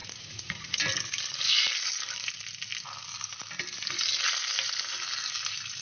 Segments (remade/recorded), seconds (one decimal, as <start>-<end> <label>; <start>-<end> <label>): 0.0-0.8 remade; 0.8-5.8 recorded